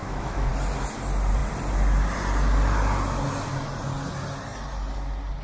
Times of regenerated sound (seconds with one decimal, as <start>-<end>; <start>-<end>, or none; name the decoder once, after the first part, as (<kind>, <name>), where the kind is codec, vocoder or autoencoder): 0.0-0.5 (autoencoder, DAC-VAE)